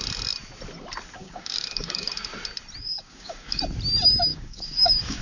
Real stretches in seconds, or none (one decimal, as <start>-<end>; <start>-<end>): 0.0-1.2; 2.1-2.8; 3.6-4.3